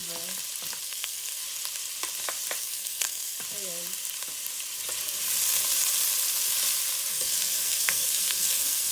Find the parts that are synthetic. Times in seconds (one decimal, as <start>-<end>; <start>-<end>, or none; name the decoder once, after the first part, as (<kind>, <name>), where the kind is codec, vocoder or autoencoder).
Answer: 0.8-1.4 (codec, SNAC); 2.6-3.4; 7.1-8.9